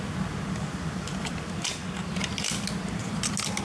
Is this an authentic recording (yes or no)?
yes